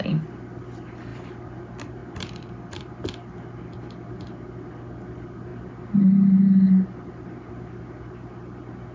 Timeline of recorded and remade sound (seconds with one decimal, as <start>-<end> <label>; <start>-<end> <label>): 0.0-1.1 recorded; 1.1-1.6 remade; 1.6-2.0 recorded; 2.0-2.9 remade; 2.9-8.9 recorded